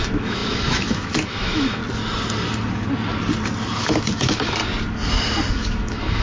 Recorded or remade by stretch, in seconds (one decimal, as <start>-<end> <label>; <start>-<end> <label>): 0.0-1.8 remade; 1.8-3.8 recorded; 3.8-4.6 remade; 4.6-5.5 recorded; 5.5-6.2 remade